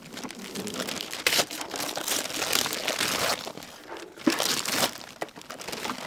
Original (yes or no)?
yes